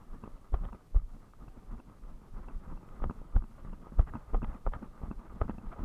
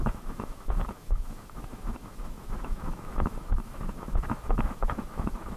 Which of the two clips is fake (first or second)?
second